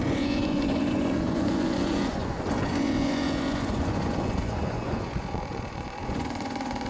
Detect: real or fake fake